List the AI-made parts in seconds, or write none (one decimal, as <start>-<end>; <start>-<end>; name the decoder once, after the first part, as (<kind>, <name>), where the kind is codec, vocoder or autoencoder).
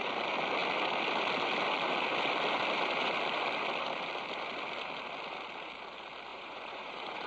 6.3-7.3 (vocoder, Vocos)